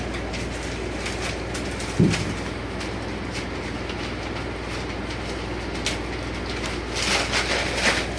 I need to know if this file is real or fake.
real